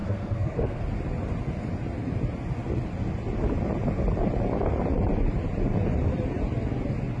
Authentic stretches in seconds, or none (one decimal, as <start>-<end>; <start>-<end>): 0.8-7.2